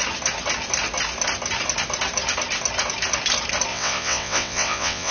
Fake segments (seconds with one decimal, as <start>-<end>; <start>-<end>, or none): 3.7-5.1

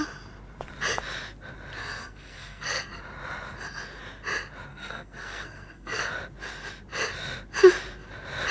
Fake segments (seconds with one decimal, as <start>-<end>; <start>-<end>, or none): 1.8-3.0; 4.7-6.1

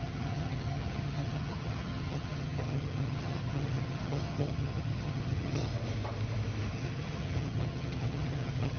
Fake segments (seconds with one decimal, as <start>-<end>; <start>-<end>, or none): 0.0-5.7; 6.7-8.8

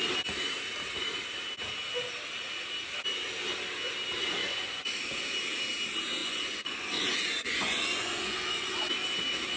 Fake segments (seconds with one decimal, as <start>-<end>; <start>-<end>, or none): 4.2-4.9; 6.2-8.9

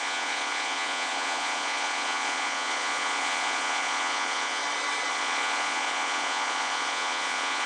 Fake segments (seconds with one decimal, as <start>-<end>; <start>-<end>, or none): 0.0-4.6; 5.1-7.7

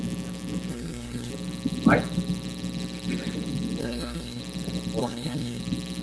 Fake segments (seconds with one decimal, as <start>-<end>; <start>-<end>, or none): 0.7-1.3; 3.8-4.4; 5.0-5.6

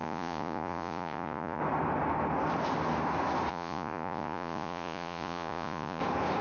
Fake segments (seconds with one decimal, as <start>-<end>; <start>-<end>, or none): 0.0-1.6; 3.5-6.0